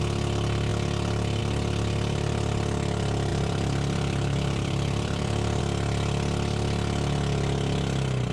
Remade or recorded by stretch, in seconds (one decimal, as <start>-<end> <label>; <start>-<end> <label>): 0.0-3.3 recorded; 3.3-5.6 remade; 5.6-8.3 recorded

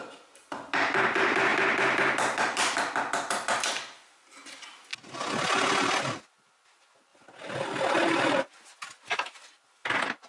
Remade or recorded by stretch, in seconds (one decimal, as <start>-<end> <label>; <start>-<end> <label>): 0.0-1.5 recorded; 1.5-3.5 remade; 3.5-7.1 recorded; 7.1-7.8 remade; 7.8-10.3 recorded

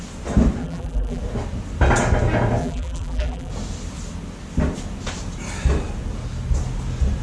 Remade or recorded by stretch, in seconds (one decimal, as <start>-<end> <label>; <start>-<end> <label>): 0.0-0.6 recorded; 0.6-1.2 remade; 1.2-2.6 recorded; 2.6-3.5 remade; 3.5-7.2 recorded

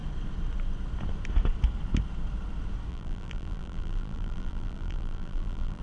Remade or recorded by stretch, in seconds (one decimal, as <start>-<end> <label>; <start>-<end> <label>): 0.0-2.9 recorded; 2.9-5.8 remade